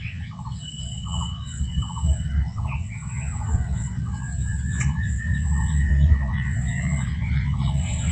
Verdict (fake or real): fake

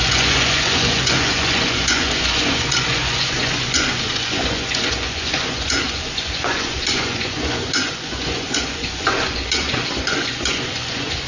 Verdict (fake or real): fake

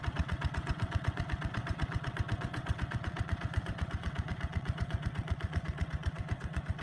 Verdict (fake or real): fake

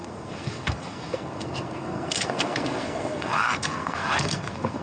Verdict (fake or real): fake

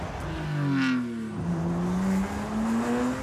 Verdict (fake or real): real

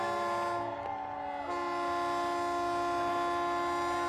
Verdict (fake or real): real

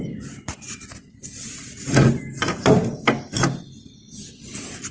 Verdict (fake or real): real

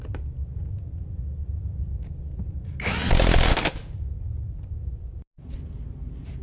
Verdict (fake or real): real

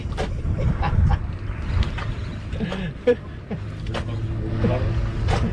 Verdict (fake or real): real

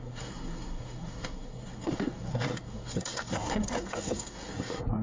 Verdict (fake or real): fake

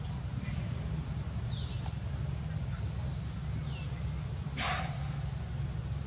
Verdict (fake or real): real